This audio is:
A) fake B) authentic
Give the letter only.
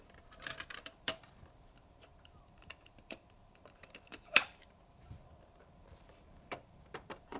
A